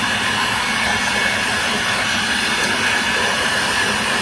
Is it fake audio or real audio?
real